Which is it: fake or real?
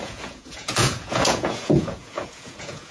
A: fake